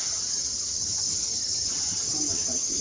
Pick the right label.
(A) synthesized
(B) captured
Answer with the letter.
A